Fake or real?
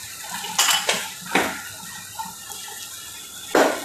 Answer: real